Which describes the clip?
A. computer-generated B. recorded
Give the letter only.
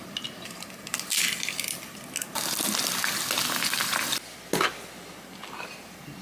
B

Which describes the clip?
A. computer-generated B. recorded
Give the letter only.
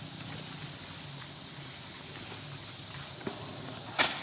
B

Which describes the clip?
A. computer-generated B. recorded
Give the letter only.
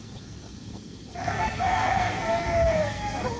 A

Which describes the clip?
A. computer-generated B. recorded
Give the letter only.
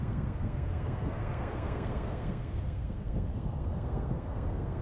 A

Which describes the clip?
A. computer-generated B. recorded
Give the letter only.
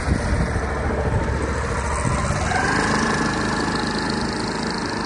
B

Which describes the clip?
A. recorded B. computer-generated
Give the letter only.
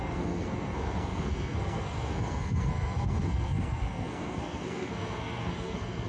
B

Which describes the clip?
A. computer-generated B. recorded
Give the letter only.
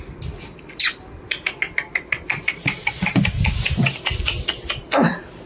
B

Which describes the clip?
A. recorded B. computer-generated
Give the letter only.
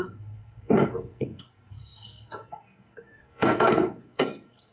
B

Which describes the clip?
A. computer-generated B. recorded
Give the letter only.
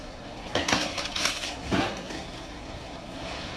A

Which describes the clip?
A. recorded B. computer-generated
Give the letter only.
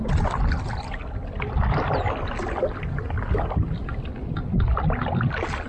A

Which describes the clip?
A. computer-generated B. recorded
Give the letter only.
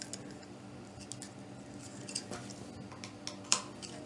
B